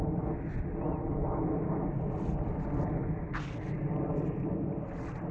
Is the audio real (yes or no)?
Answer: yes